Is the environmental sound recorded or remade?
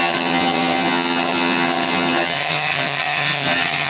remade